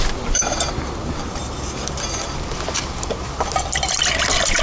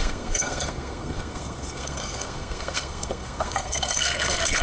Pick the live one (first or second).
first